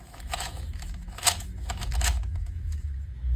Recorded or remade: remade